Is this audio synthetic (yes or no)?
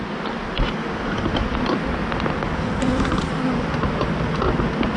no